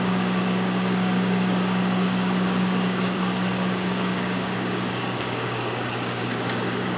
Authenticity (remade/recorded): remade